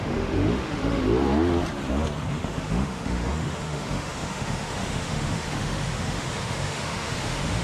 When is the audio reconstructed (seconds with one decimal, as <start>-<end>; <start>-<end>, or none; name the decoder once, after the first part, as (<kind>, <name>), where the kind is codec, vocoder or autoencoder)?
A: 0.0-1.0 (autoencoder, DAC-VAE); 2.3-7.6